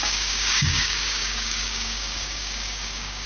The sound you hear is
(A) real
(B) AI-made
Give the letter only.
B